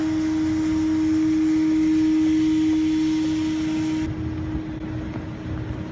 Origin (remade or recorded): recorded